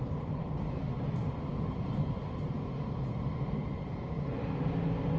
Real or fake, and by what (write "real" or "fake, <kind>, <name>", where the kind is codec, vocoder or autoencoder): real